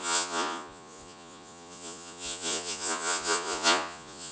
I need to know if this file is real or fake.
fake